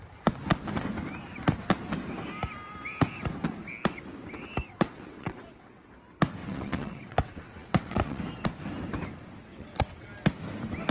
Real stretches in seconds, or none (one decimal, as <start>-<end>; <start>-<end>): 0.0-4.6; 5.9-6.4; 8.2-9.5; 10.1-10.9